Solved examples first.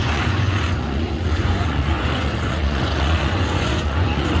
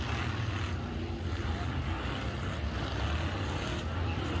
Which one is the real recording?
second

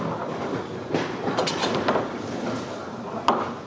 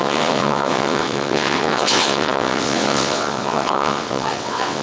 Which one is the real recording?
first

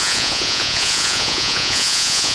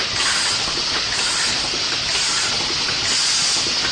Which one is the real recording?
second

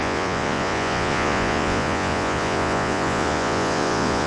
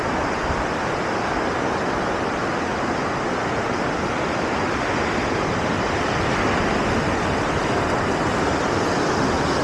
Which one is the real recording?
second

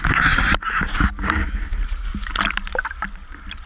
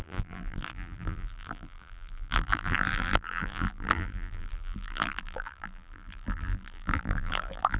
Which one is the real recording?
first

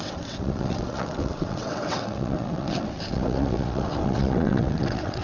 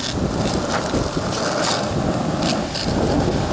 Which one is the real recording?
second